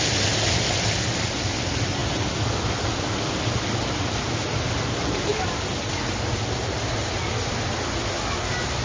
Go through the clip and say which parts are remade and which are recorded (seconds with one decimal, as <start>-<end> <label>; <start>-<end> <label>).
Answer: 0.0-8.8 recorded